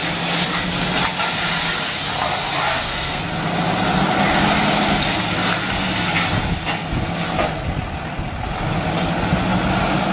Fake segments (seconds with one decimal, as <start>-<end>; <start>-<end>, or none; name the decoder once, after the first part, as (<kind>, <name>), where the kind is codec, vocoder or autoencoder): 2.7-3.2 (codec, SNAC)